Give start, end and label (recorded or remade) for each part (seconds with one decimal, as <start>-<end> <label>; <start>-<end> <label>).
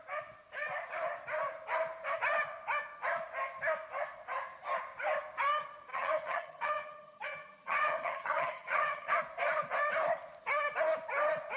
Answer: 0.0-5.9 recorded; 5.9-9.2 remade; 9.2-11.6 recorded